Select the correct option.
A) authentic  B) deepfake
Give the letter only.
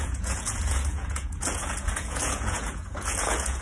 B